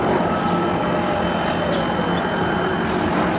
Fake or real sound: real